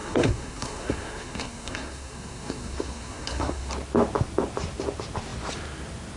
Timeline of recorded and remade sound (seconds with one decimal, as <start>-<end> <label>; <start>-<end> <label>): 0.0-3.7 remade; 3.7-6.2 recorded